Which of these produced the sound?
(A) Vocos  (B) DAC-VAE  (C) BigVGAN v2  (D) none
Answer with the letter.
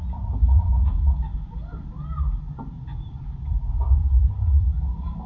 C